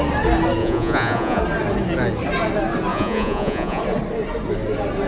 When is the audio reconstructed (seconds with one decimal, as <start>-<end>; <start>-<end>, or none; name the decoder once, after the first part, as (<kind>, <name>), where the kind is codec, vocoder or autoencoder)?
0.6-1.4 (vocoder, Vocos); 2.9-3.8